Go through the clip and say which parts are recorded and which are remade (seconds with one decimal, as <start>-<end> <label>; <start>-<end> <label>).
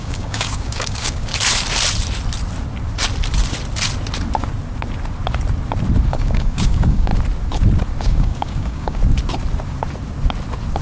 0.0-1.3 remade; 1.3-6.1 recorded; 6.1-7.1 remade; 7.1-8.0 recorded; 8.0-9.0 remade; 9.0-10.8 recorded